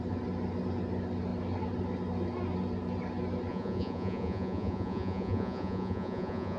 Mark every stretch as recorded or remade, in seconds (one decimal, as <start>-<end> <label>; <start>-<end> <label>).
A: 0.0-3.5 recorded; 3.5-6.6 remade